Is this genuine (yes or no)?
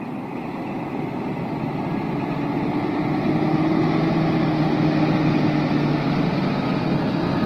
yes